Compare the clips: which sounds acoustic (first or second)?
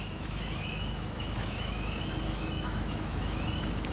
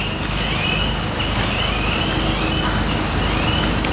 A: second